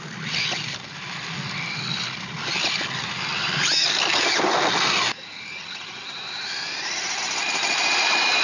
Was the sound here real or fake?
real